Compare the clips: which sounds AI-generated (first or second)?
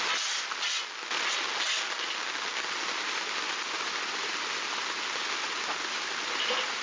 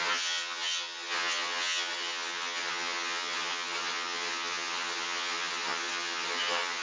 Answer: second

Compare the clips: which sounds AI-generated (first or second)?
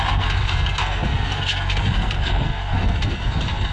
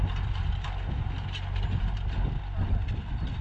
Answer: first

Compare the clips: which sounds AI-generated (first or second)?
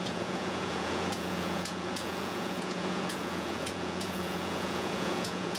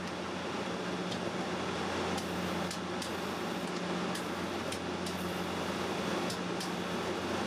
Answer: first